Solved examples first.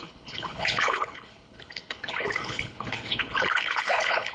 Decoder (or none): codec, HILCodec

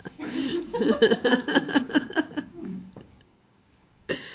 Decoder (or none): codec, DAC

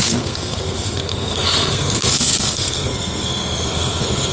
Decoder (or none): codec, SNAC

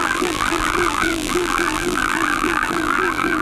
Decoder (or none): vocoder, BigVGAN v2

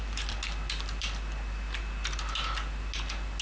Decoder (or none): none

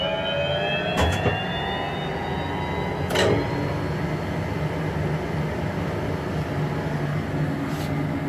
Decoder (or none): none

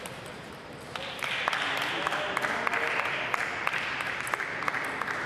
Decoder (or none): none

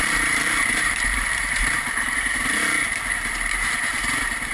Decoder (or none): vocoder, BigVGAN v2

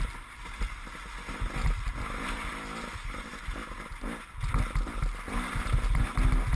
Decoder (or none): none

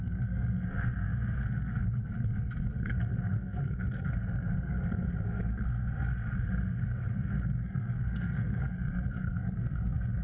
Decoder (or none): codec, SNAC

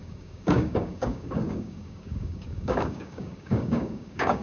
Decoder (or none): codec, DAC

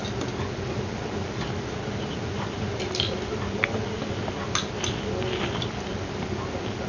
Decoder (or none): none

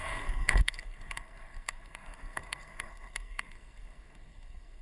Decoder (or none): codec, SNAC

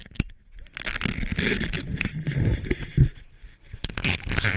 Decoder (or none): vocoder, BigVGAN v2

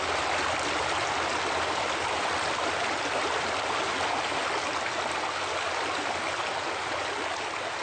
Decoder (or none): none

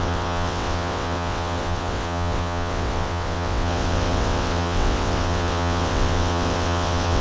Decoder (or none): vocoder, WaveNeXt